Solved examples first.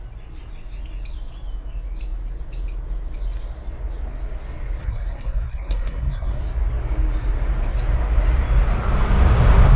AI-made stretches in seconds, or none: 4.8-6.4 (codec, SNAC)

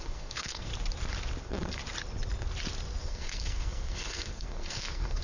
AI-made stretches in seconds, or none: 0.0-0.7 (codec, SNAC); 1.4-1.8; 3.0-5.2